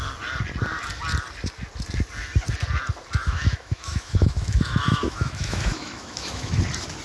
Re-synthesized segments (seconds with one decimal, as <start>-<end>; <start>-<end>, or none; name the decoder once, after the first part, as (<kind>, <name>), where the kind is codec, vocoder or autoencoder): 3.2-6.6 (autoencoder, DAC-VAE)

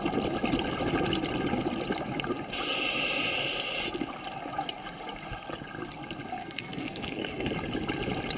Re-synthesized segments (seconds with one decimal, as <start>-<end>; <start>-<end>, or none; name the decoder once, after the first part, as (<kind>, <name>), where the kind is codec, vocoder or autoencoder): 6.4-7.5 (codec, SNAC)

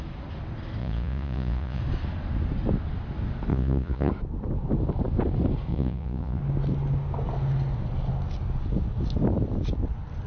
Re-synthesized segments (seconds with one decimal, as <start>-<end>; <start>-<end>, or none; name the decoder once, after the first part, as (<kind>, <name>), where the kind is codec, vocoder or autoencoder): 0.8-1.8 (vocoder, Vocos); 3.5-4.1; 5.7-6.4

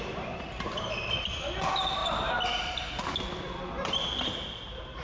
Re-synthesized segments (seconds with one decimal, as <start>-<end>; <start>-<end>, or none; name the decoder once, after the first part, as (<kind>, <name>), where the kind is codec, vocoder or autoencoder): 2.0-3.0 (vocoder, BigVGAN v2)

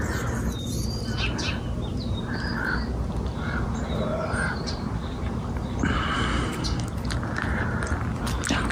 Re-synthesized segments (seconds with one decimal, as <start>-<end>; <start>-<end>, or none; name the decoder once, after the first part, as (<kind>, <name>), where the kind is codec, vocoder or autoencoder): 1.9-2.5 (vocoder, BigVGAN v2); 3.3-6.6

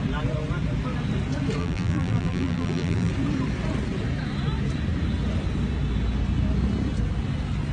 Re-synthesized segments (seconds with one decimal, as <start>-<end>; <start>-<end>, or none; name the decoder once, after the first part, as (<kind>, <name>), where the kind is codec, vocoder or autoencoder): 1.6-3.1 (vocoder, BigVGAN v2)

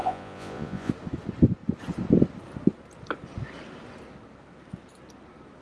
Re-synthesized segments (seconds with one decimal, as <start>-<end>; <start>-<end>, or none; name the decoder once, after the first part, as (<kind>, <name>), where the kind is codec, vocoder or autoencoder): 0.0-0.9 (vocoder, Vocos)

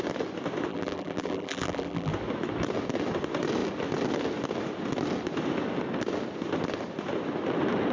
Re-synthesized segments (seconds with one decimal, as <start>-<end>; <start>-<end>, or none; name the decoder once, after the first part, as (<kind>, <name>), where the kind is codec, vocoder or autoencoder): 0.7-2.1 (vocoder, BigVGAN v2)